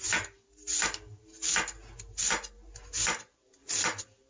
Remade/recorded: recorded